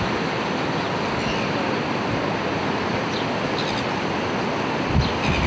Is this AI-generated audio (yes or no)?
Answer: no